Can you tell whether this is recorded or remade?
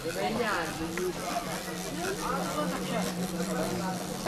recorded